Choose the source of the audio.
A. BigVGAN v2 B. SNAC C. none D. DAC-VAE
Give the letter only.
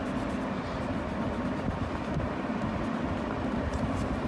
C